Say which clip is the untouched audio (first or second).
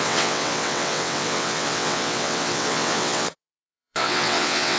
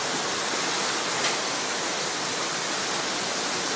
second